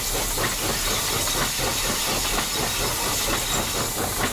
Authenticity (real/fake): real